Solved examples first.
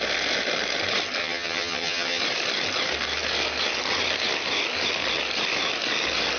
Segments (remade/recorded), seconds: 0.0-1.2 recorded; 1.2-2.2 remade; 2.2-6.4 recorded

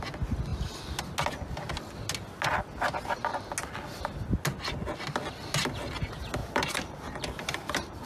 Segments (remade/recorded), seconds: 0.0-6.4 recorded; 6.4-8.1 remade

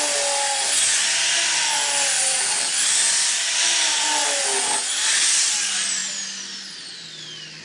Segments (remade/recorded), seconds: 0.0-7.6 recorded

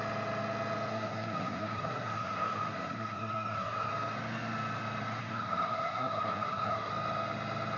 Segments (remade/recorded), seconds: 0.0-0.9 recorded; 0.9-3.9 remade; 3.9-5.2 recorded; 5.2-6.9 remade; 6.9-7.8 recorded

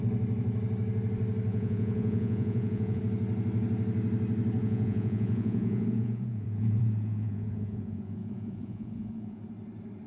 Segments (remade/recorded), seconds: 0.0-1.5 recorded; 1.5-3.0 remade; 3.0-4.6 recorded; 4.6-9.4 remade; 9.4-10.1 recorded

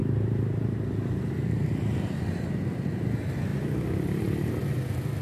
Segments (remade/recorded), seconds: 0.0-2.1 remade; 2.1-5.2 recorded

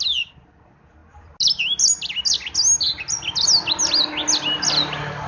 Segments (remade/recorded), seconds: 0.0-5.3 recorded

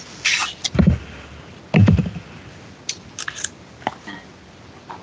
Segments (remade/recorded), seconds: 0.0-5.0 recorded